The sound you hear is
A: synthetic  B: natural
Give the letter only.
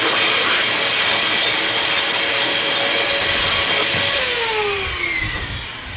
B